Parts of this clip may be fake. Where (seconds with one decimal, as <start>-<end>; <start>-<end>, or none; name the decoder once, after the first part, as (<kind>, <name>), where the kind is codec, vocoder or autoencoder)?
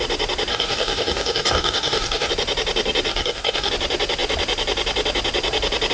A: 0.5-2.3 (codec, DAC); 3.1-3.7